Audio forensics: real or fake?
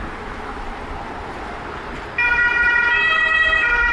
real